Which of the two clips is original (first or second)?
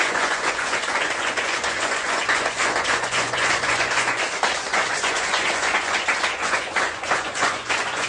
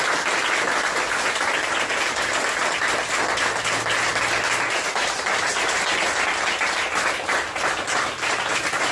second